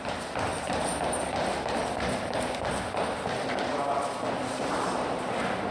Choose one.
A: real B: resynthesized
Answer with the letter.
A